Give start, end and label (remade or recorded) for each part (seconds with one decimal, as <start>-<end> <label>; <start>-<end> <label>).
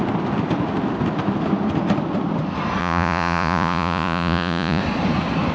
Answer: 0.0-2.8 recorded; 2.8-4.8 remade; 4.8-5.5 recorded